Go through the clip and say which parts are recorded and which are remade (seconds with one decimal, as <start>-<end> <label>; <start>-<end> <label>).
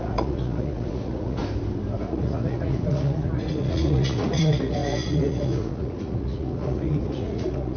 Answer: 0.0-1.4 remade; 1.4-2.0 recorded; 2.0-7.8 remade